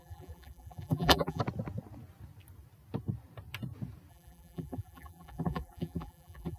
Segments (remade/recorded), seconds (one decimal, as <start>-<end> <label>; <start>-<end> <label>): 0.0-1.4 remade; 1.4-4.1 recorded; 4.1-6.6 remade